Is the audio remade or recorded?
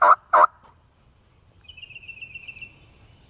remade